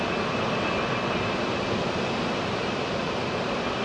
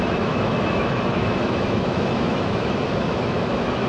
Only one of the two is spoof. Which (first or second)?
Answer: second